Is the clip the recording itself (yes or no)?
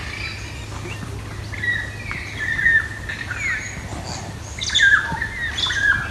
yes